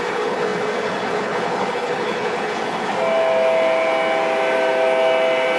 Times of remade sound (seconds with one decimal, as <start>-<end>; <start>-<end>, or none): 0.0-2.9

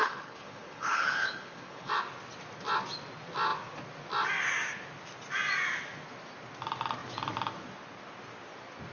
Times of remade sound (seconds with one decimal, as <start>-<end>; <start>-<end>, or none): 0.0-1.9